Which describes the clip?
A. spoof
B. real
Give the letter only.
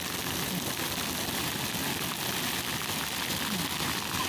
B